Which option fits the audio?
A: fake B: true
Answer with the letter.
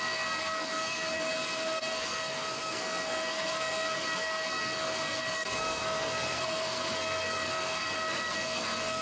A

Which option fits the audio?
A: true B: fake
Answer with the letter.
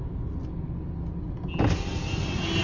A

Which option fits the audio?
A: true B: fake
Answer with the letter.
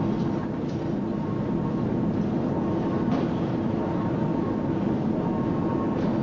A